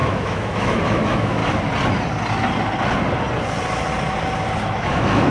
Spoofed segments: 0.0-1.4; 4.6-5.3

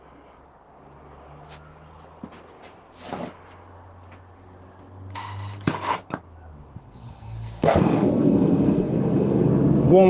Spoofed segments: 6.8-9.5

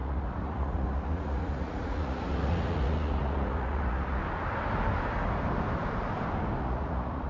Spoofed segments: 0.0-4.2; 6.6-7.3

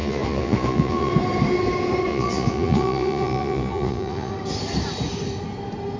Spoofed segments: 0.0-1.1; 2.1-4.3